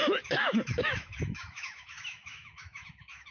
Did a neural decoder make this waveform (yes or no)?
yes